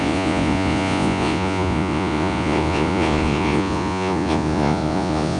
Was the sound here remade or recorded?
remade